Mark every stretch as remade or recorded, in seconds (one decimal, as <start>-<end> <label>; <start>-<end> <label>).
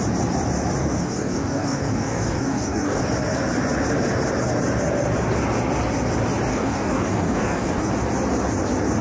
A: 0.0-0.8 recorded; 0.8-3.0 remade; 3.0-6.5 recorded; 6.5-7.9 remade; 7.9-9.0 recorded